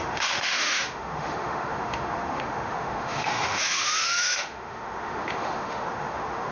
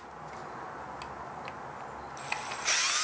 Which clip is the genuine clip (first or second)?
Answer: second